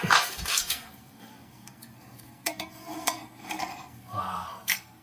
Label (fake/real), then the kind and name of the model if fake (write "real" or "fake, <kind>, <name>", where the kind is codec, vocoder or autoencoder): fake, codec, SNAC